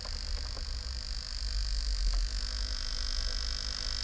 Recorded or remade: recorded